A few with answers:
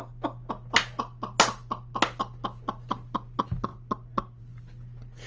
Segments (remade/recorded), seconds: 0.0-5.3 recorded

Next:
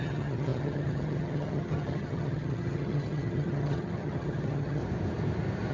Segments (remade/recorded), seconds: 0.0-4.8 remade; 4.8-5.7 recorded

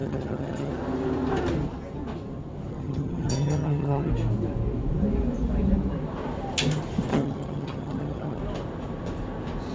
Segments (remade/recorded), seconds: 0.0-0.7 remade; 0.7-2.7 recorded; 2.7-4.1 remade; 4.1-7.1 recorded; 7.1-8.4 remade; 8.4-9.7 recorded

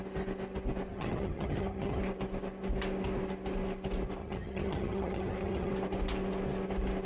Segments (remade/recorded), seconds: 0.0-0.9 recorded; 0.9-2.0 remade; 2.0-4.2 recorded; 4.2-5.7 remade; 5.7-7.1 recorded